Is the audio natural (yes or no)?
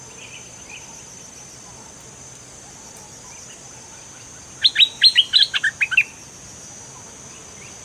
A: yes